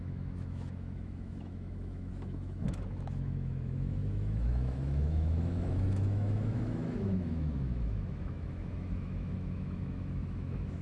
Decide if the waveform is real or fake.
fake